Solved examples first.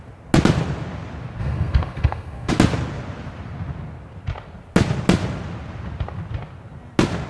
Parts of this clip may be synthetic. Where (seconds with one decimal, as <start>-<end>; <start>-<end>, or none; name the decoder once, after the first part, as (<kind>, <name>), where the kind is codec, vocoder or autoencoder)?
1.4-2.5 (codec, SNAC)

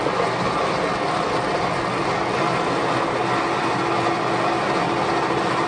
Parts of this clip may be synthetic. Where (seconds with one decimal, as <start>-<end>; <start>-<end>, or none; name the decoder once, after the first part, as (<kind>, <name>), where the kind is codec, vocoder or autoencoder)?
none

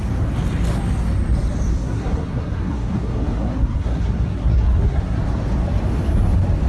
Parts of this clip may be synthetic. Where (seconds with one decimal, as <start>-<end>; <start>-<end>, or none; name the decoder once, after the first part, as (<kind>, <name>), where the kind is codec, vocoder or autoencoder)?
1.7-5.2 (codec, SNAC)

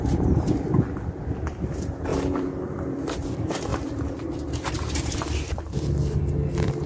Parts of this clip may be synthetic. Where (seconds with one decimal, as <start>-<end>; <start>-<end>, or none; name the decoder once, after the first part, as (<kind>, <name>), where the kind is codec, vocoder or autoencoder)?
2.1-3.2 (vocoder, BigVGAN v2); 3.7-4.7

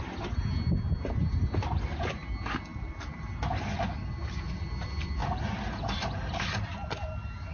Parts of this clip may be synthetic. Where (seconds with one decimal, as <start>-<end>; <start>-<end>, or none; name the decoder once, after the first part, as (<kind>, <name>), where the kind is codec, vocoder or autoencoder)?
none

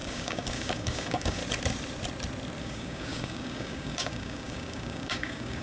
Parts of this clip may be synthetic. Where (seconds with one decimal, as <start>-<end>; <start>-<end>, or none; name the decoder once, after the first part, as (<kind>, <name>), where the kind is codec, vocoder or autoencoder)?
0.0-1.4 (codec, DAC); 2.6-5.6

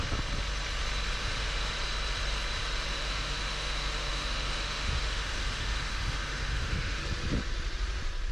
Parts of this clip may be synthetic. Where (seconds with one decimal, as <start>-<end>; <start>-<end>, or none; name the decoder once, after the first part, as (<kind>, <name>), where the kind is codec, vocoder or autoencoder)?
1.2-1.7 (autoencoder, DAC-VAE); 2.9-7.0